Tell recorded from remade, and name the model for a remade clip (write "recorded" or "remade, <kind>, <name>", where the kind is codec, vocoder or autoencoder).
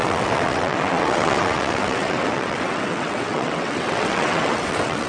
remade, vocoder, WaveNeXt